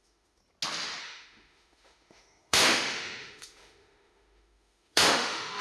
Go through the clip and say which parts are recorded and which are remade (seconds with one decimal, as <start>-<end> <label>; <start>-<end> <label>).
0.0-0.4 remade; 0.4-1.0 recorded; 1.0-5.6 remade